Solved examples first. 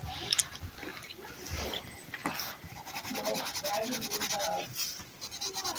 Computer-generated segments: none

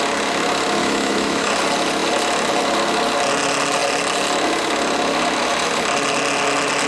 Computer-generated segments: 0.8-1.5 (autoencoder, DAC-VAE)

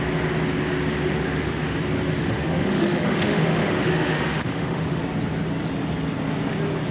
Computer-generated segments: 1.1-1.8 (autoencoder, DAC-VAE); 2.2-5.0